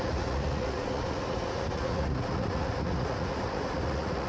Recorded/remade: remade